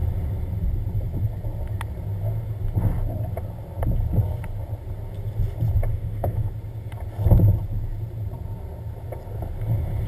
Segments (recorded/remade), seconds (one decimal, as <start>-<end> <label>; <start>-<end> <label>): 0.0-5.9 recorded; 5.9-6.5 remade; 6.5-10.1 recorded